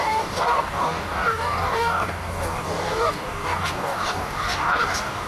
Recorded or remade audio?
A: remade